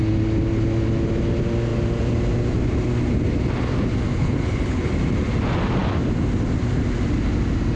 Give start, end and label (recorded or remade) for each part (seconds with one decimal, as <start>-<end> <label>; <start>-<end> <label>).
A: 0.0-4.1 recorded; 4.1-4.9 remade; 4.9-7.8 recorded